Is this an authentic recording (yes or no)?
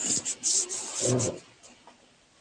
yes